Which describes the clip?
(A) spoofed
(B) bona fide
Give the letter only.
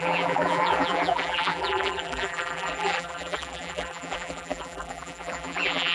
A